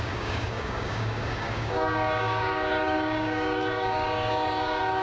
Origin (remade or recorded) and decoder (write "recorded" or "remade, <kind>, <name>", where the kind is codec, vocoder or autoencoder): remade, codec, DAC